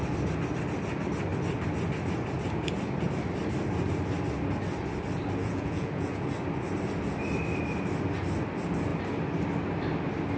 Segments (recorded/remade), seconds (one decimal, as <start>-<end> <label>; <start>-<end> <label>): 0.0-5.4 recorded; 5.4-6.2 remade; 6.2-10.4 recorded